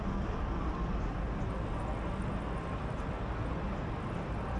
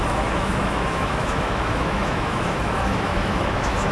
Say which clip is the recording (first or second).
first